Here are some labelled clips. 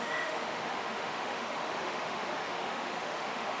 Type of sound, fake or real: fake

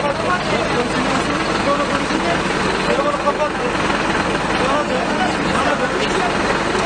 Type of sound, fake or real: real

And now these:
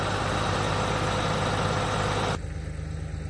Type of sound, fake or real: real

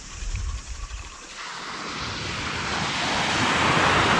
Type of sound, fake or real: real